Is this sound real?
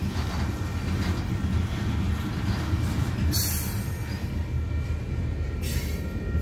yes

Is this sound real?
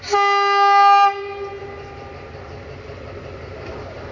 yes